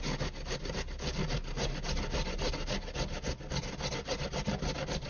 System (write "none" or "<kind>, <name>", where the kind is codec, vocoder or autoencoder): none